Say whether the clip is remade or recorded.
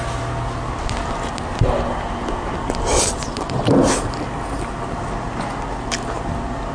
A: recorded